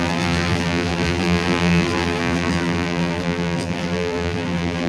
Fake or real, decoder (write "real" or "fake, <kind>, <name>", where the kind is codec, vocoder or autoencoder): fake, vocoder, BigVGAN v2